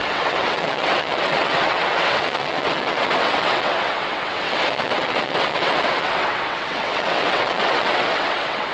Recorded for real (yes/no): no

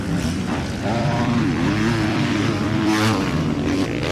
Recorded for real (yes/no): no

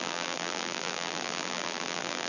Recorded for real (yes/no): no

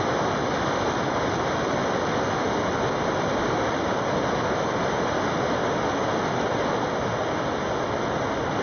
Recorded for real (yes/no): yes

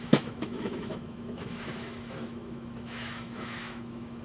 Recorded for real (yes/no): no